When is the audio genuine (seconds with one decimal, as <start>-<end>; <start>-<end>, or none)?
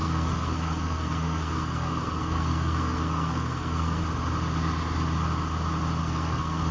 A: 4.0-6.0